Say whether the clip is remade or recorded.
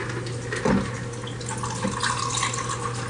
recorded